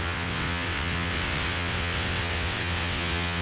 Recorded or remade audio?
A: remade